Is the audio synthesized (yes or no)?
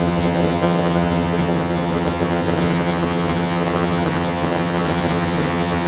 yes